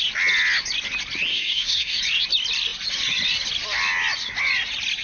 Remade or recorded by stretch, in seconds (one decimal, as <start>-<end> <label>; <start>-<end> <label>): 0.0-1.3 recorded; 1.3-2.0 remade; 2.0-5.0 recorded